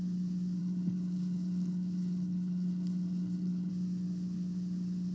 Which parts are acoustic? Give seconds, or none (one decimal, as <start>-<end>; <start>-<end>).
0.0-0.6; 3.7-5.1

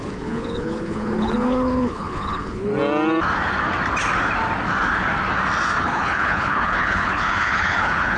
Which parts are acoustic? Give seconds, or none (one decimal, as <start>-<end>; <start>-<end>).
2.7-5.8